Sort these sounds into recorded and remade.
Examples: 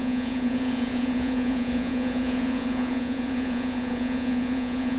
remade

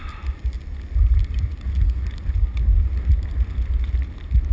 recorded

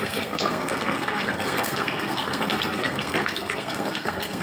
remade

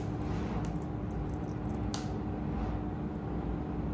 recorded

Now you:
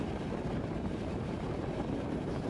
remade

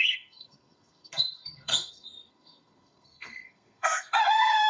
remade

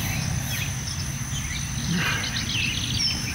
recorded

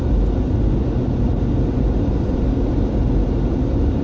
recorded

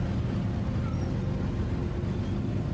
recorded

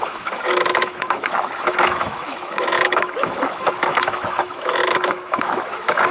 remade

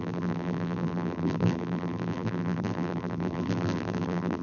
remade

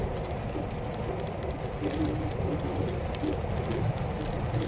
recorded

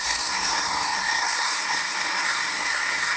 remade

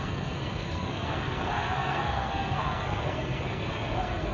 remade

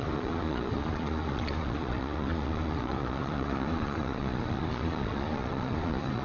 remade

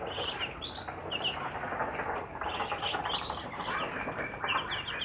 recorded